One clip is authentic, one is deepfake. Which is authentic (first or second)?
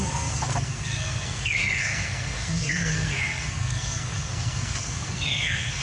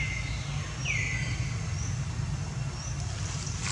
second